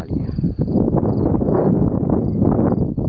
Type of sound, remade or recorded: remade